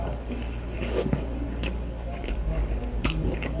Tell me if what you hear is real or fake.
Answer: fake